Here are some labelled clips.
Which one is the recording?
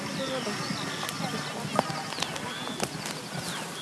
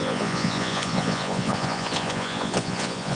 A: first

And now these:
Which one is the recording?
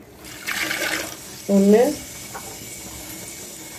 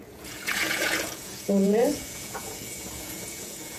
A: first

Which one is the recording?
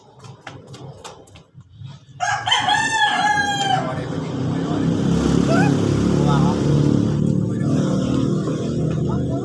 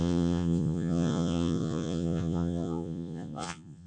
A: first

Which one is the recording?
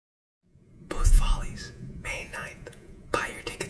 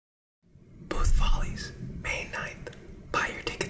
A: second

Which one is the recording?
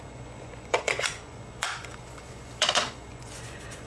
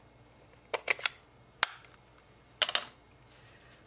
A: second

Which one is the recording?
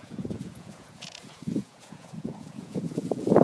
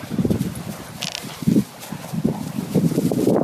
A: second